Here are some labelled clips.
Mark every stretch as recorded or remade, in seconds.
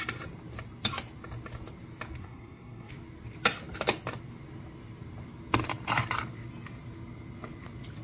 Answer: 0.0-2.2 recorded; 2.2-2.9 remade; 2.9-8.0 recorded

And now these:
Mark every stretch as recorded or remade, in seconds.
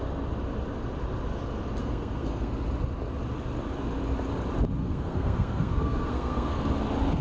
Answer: 0.0-1.8 recorded; 1.8-2.5 remade; 2.5-4.8 recorded; 4.8-6.6 remade; 6.6-7.2 recorded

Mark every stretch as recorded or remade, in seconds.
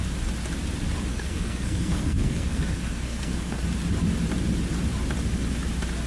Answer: 0.0-1.1 recorded; 1.1-3.6 remade; 3.6-6.1 recorded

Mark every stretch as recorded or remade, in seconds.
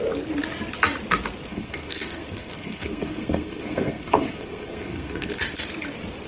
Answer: 0.0-1.5 recorded; 1.5-5.3 remade; 5.3-6.3 recorded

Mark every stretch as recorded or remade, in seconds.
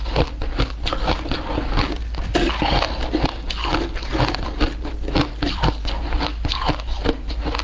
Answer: 0.0-7.6 recorded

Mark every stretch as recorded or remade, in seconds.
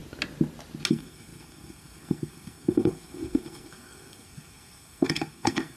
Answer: 0.0-0.9 recorded; 0.9-5.8 remade